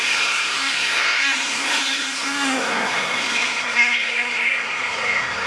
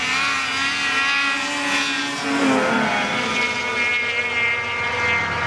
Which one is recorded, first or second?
second